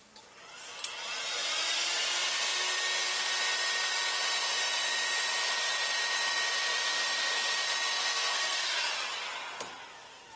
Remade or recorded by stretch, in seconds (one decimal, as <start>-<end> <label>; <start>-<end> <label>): 0.0-8.0 recorded; 8.0-8.6 remade; 8.6-10.4 recorded